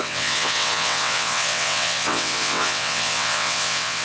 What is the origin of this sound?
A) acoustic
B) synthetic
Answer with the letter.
B